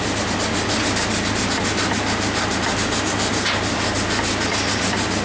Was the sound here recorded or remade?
recorded